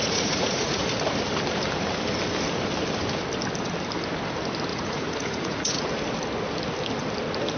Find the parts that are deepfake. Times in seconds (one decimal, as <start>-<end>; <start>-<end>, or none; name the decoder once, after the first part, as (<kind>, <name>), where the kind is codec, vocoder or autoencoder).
0.0-0.9 (vocoder, Vocos); 4.7-5.8